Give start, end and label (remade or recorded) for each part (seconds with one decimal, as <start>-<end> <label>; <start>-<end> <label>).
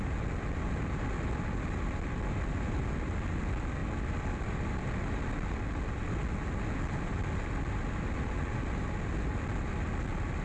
0.0-10.4 recorded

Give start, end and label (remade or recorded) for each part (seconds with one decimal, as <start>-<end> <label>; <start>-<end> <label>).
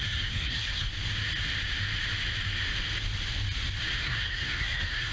0.0-0.9 remade; 0.9-4.0 recorded; 4.0-5.1 remade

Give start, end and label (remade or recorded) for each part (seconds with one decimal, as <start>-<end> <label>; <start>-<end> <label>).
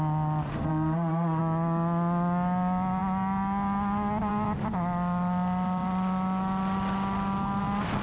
0.0-0.5 recorded; 0.5-1.4 remade; 1.4-8.0 recorded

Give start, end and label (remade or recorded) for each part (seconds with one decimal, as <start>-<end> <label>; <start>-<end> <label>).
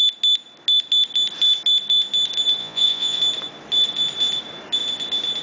0.0-2.6 recorded; 2.6-3.2 remade; 3.2-5.4 recorded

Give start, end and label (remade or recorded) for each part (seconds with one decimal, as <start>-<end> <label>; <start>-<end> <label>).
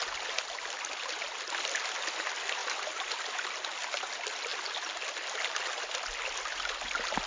0.0-2.6 recorded; 2.6-3.2 remade; 3.2-7.3 recorded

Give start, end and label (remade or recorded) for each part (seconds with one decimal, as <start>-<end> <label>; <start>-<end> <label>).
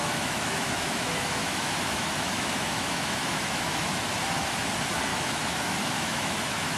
0.0-4.1 remade; 4.1-5.1 recorded; 5.1-6.8 remade